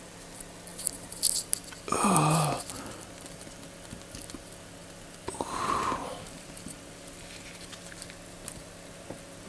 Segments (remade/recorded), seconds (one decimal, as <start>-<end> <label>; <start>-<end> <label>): 0.0-4.8 recorded; 4.8-6.9 remade; 6.9-9.5 recorded